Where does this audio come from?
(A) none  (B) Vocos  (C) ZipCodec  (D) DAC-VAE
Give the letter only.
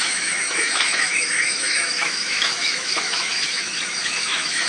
D